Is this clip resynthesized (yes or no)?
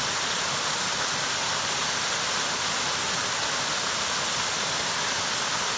no